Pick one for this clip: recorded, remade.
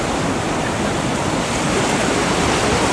remade